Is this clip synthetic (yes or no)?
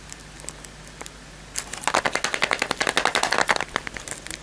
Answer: no